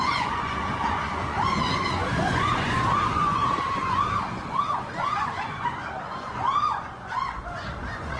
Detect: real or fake fake